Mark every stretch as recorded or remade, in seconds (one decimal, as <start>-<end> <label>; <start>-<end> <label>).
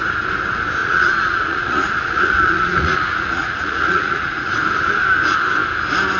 0.0-0.8 recorded; 0.8-4.5 remade; 4.5-6.2 recorded